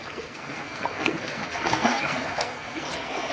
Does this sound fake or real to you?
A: fake